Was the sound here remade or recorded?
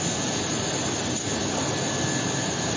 recorded